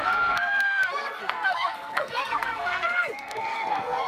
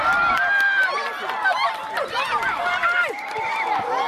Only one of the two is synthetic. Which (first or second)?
first